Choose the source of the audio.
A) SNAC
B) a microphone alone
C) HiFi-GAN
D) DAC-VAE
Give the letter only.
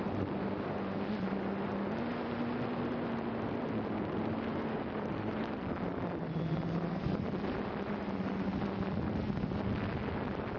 B